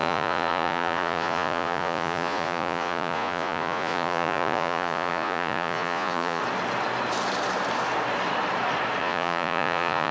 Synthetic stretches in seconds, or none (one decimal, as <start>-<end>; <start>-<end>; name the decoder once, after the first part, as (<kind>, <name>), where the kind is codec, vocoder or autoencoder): 0.0-6.4 (vocoder, Vocos); 9.0-10.1